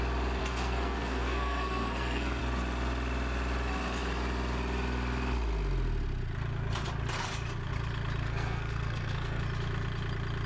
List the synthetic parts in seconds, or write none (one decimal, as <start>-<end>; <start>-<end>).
0.4-2.4; 8.2-9.4